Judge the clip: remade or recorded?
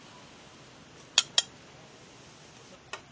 recorded